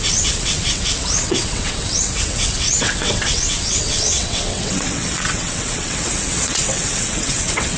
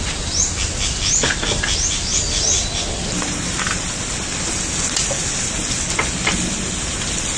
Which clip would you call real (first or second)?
second